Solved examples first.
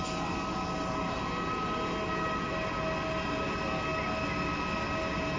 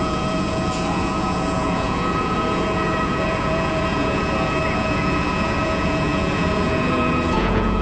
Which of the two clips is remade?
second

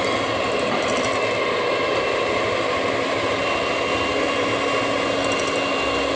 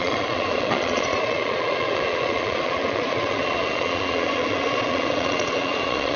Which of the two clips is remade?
second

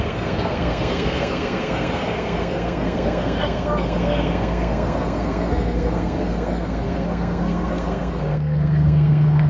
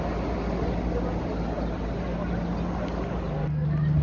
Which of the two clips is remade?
first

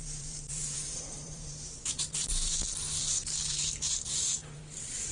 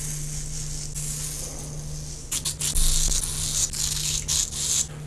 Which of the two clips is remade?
first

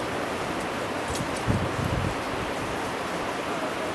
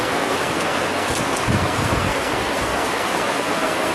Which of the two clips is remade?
second